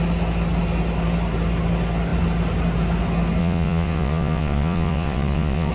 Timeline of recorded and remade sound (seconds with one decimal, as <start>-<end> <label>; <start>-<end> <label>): 0.0-3.4 recorded; 3.4-5.7 remade